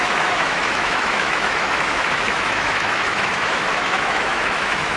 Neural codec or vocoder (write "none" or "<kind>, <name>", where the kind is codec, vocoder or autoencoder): autoencoder, DAC-VAE